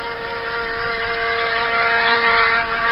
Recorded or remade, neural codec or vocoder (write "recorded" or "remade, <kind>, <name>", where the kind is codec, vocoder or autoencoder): recorded